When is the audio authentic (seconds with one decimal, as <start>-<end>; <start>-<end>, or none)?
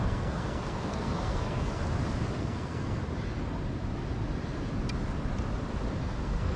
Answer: 1.8-2.4; 3.0-6.0